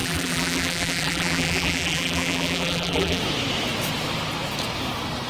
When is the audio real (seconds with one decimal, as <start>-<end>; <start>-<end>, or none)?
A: 3.2-5.3